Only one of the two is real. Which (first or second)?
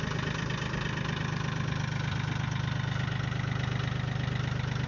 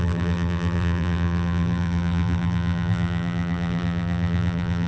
first